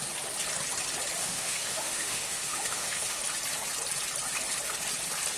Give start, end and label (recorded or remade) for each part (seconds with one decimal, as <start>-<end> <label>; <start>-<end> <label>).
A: 0.0-1.2 recorded; 1.2-3.2 remade; 3.2-5.4 recorded